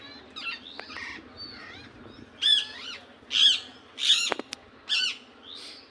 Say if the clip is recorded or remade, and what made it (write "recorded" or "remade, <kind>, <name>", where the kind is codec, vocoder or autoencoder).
recorded